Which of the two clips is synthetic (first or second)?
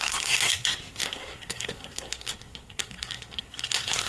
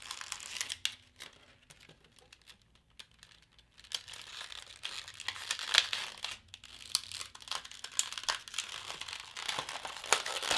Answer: first